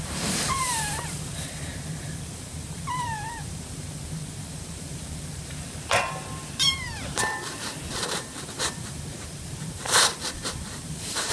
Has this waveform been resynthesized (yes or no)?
yes